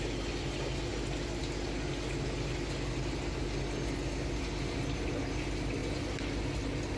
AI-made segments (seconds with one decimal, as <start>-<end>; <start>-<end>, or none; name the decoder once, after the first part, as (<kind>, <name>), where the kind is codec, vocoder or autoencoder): none

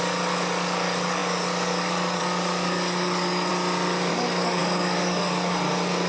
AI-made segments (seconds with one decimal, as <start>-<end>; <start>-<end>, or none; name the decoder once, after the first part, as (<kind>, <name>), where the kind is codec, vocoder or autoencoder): 0.0-3.5 (codec, DAC); 4.1-6.1